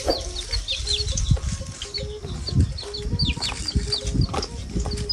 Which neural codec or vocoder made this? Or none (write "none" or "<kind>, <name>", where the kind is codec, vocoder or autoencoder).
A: none